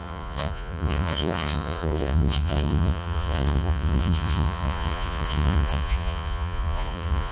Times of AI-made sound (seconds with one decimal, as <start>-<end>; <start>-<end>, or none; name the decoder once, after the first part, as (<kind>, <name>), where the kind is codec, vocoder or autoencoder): 0.0-7.3 (vocoder, Vocos)